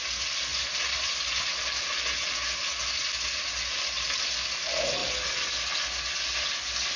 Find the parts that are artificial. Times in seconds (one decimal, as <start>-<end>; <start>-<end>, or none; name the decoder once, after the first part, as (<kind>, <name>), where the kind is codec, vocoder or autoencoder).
0.5-1.1 (vocoder, BigVGAN v2)